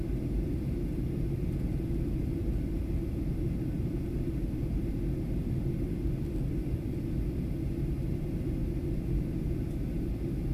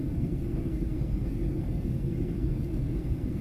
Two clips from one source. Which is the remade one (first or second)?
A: second